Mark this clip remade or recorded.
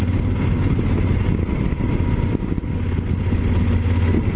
recorded